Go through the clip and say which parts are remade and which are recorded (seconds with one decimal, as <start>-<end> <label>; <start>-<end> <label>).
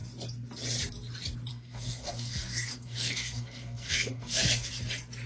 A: 0.0-1.5 recorded; 1.5-4.7 remade; 4.7-5.3 recorded